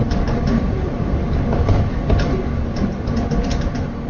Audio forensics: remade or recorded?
recorded